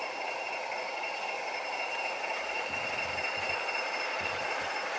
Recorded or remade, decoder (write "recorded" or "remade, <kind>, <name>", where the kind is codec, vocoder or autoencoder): remade, vocoder, BigVGAN v2